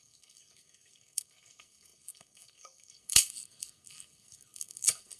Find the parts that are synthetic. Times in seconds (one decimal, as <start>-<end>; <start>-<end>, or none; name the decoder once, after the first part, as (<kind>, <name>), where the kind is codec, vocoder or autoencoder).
0.0-5.2 (codec, SNAC)